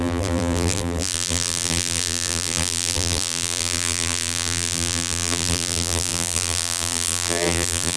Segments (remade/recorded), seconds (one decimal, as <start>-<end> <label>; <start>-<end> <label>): 0.0-8.0 remade